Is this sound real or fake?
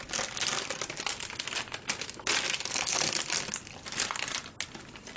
real